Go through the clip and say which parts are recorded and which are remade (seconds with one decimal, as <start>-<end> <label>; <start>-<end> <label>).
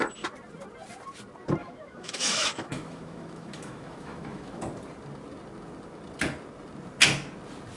0.0-1.6 recorded; 1.6-4.6 remade; 4.6-7.8 recorded